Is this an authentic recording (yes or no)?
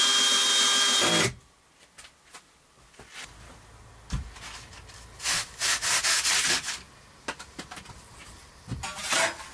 yes